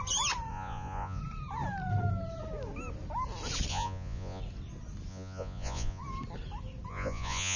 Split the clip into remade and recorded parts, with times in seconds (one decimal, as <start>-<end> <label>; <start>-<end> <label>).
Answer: 0.0-0.5 recorded; 0.5-1.2 remade; 1.2-3.7 recorded; 3.7-4.4 remade; 4.4-5.1 recorded; 5.1-6.0 remade; 6.0-6.9 recorded; 6.9-7.6 remade